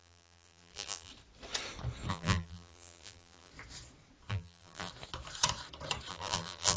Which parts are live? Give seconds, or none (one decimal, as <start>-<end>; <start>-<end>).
1.1-2.1; 3.5-4.3; 4.9-6.1